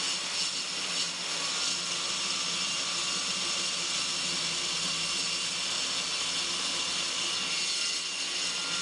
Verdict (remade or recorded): recorded